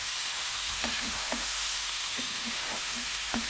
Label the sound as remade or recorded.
remade